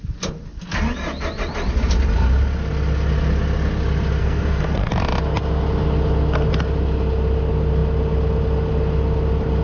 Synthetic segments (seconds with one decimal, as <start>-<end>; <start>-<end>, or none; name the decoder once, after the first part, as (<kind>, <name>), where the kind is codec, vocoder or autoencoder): 4.2-4.9 (codec, SNAC)